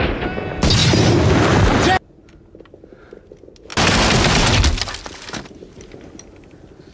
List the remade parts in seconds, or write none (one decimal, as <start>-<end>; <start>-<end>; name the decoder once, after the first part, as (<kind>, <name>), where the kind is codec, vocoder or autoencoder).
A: none